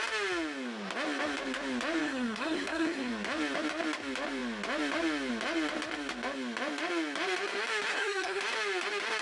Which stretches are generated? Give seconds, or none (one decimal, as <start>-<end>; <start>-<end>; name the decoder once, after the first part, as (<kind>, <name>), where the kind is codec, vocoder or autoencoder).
2.0-3.1 (codec, SNAC); 7.9-8.4